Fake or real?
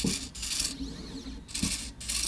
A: real